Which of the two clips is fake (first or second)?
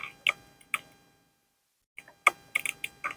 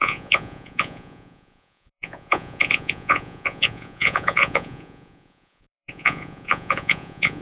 second